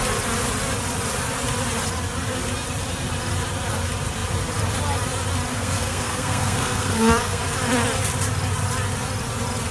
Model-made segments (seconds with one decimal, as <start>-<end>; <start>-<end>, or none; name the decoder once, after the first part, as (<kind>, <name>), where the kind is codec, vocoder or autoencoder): 5.5-7.4 (codec, SNAC)